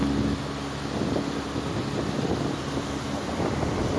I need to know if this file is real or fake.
real